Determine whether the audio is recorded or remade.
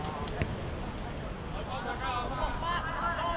recorded